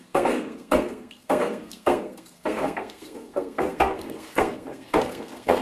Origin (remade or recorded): remade